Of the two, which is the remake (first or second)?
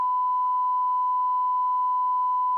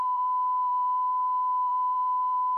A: second